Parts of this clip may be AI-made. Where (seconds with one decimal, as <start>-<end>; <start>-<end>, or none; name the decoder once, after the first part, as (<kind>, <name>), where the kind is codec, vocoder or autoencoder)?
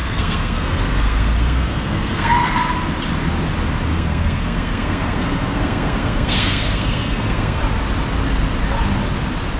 0.0-2.7 (codec, SNAC); 3.9-7.6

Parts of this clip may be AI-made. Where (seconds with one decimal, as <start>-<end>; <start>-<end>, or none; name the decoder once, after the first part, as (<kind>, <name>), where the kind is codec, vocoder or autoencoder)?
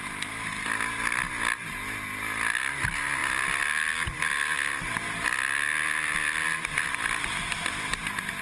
none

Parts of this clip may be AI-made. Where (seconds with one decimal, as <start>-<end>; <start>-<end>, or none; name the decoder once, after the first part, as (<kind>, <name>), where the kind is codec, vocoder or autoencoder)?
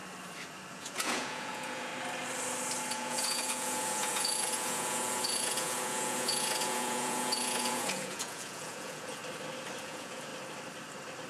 0.7-1.9 (vocoder, Vocos); 2.9-9.2; 9.8-10.3